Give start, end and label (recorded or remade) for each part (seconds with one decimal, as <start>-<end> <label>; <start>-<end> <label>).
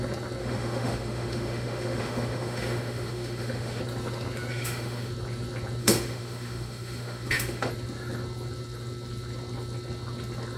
0.0-0.4 recorded; 0.4-3.8 remade; 3.8-4.5 recorded; 4.5-5.1 remade; 5.1-5.8 recorded; 5.8-7.7 remade; 7.7-10.6 recorded